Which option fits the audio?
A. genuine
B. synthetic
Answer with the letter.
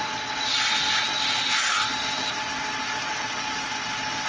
A